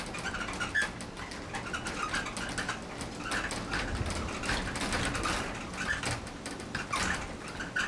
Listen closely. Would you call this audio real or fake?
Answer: real